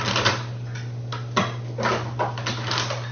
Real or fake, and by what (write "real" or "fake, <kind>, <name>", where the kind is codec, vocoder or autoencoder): real